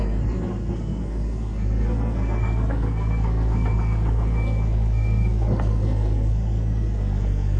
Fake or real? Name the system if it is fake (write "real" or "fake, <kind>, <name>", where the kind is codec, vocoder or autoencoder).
fake, codec, SNAC